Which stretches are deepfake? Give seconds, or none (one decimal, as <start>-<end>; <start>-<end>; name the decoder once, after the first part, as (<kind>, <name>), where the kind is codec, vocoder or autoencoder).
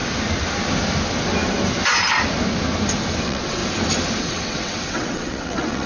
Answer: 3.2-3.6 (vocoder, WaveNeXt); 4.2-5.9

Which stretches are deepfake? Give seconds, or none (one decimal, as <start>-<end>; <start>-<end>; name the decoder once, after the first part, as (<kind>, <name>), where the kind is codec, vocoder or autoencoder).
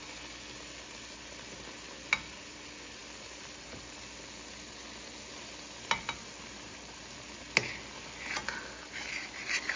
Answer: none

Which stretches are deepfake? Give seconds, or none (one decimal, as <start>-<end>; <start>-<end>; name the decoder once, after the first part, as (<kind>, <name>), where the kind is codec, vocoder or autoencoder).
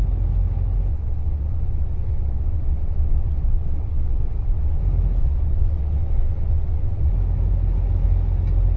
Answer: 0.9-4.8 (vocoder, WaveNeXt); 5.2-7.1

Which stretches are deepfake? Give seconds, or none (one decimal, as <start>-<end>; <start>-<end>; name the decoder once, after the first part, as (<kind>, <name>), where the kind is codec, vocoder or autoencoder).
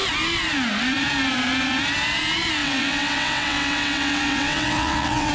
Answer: 2.6-5.3 (vocoder, WaveNeXt)